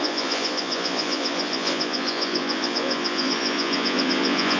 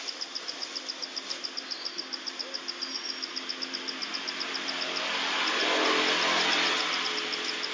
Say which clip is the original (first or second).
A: second